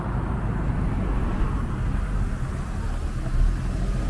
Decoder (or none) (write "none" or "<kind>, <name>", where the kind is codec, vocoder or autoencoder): none